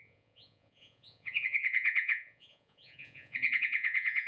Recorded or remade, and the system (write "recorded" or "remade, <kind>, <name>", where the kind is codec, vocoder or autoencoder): remade, vocoder, Vocos